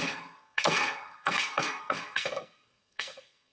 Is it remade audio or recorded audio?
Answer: remade